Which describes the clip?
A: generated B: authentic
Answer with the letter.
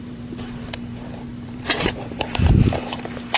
A